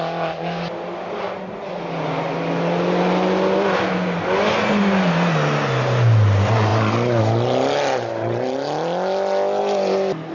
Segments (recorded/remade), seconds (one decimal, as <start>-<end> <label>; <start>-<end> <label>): 0.0-10.3 recorded